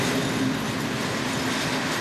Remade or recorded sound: recorded